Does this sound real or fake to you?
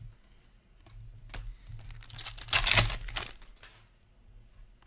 real